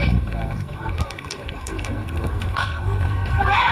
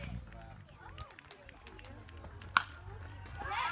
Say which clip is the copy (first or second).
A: first